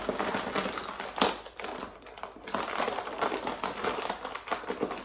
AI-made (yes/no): no